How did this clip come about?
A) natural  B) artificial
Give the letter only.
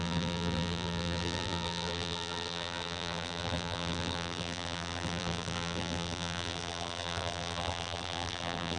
B